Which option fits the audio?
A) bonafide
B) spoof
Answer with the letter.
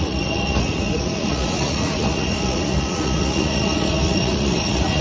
B